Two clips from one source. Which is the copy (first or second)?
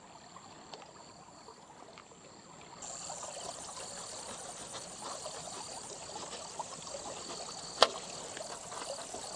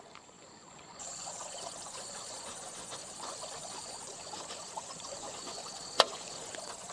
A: second